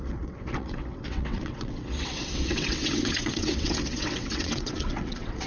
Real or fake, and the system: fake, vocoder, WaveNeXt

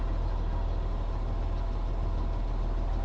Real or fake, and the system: real